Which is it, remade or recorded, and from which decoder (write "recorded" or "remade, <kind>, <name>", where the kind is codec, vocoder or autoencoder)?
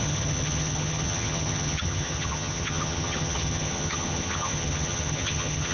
remade, vocoder, HiFi-GAN